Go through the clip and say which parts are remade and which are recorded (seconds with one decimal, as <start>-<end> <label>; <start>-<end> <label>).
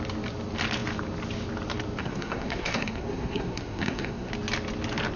0.0-2.0 recorded; 2.0-4.3 remade; 4.3-5.2 recorded